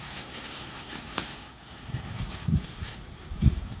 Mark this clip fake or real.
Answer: fake